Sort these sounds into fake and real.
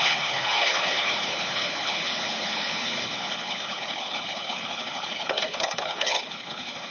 fake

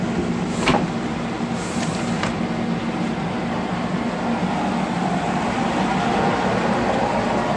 real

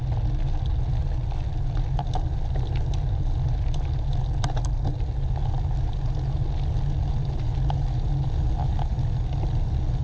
real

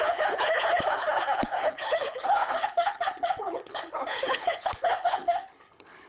fake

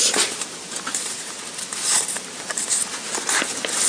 real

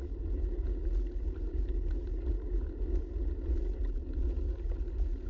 real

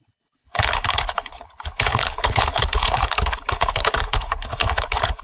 fake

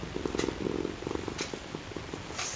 real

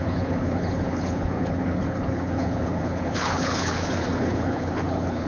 fake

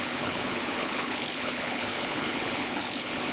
fake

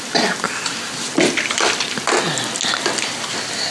real